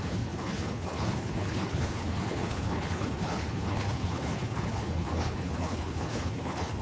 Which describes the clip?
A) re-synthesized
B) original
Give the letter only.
A